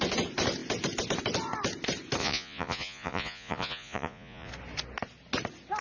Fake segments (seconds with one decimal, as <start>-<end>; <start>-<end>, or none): 2.2-4.5